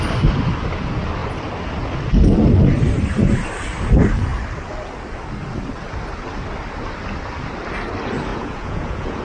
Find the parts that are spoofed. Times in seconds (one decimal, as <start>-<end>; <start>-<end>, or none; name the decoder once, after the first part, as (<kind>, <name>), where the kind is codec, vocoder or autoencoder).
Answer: 8.3-9.2 (vocoder, Vocos)